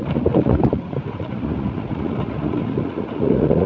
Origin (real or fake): fake